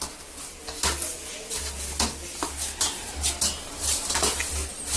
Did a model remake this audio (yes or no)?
no